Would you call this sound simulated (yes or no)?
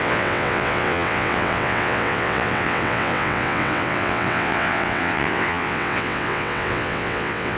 yes